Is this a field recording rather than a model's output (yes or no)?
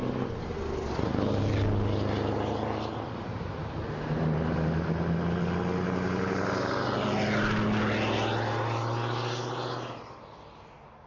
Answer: yes